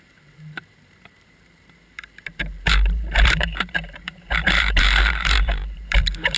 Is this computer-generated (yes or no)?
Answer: yes